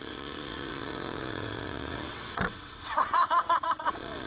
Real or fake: fake